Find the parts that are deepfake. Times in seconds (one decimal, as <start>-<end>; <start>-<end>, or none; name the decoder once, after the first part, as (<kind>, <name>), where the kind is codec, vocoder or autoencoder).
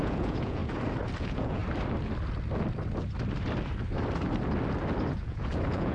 0.0-0.6 (vocoder, Vocos); 1.2-1.6; 5.1-5.9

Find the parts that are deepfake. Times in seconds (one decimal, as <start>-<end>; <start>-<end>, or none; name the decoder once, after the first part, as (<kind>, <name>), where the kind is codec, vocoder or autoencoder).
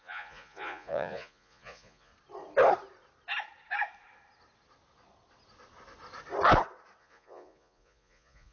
0.0-2.1 (vocoder, Vocos); 7.0-8.5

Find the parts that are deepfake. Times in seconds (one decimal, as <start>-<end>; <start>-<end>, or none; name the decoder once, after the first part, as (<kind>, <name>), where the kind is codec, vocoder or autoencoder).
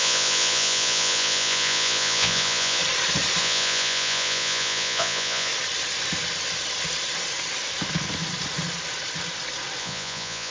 0.0-2.8 (vocoder, Vocos); 3.4-5.5; 9.8-10.5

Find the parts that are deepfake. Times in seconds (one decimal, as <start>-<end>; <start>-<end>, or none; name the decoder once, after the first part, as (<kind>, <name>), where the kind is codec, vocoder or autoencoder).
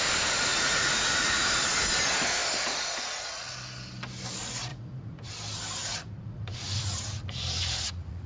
0.5-1.4 (vocoder, Vocos); 4.7-5.3; 5.8-8.3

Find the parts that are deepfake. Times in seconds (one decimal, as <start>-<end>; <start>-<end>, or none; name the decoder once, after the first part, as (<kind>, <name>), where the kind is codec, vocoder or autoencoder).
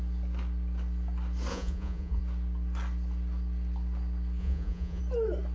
1.5-2.2 (vocoder, Vocos); 4.4-5.0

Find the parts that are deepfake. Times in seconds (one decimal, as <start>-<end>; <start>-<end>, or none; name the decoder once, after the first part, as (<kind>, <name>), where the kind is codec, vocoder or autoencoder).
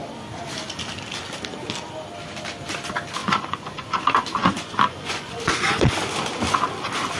3.2-4.0 (vocoder, Vocos); 4.4-6.0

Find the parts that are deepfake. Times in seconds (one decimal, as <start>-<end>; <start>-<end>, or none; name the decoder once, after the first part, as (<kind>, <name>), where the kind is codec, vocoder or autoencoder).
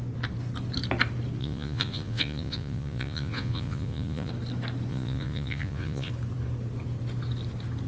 1.4-4.3 (vocoder, Vocos); 4.9-6.1